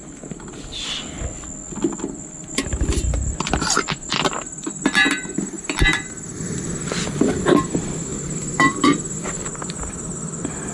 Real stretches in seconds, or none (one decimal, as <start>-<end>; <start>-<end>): 0.0-10.7